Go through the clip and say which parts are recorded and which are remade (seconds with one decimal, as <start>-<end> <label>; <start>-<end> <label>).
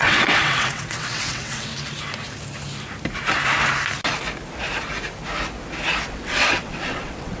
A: 0.0-1.7 remade; 1.7-6.1 recorded; 6.1-7.4 remade